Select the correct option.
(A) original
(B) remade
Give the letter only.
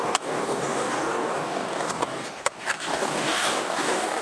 B